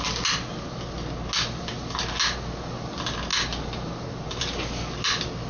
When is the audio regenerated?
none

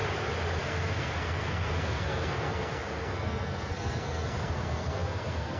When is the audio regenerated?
0.6-5.6 (codec, SNAC)

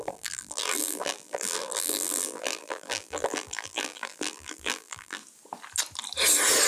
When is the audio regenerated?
0.0-5.2 (vocoder, BigVGAN v2)

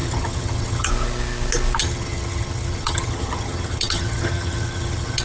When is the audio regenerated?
0.0-0.9 (vocoder, HiFi-GAN); 1.8-5.2

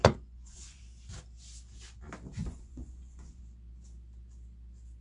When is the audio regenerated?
0.0-0.8 (vocoder, Vocos); 2.4-3.4

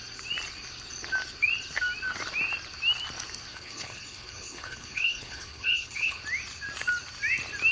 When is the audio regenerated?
3.5-6.2 (codec, HILCodec)